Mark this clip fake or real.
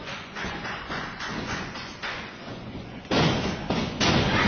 fake